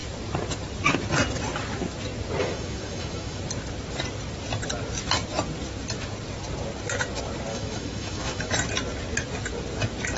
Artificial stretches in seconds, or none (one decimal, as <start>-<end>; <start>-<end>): 2.4-3.4; 7.5-8.5